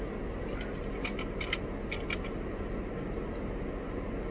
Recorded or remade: recorded